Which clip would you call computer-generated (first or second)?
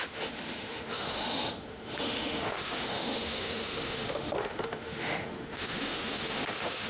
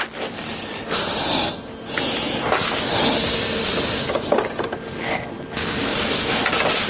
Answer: first